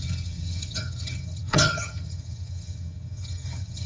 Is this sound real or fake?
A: fake